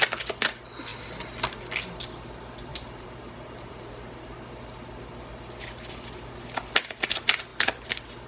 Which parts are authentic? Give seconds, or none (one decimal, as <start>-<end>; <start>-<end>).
0.0-2.7; 4.5-8.3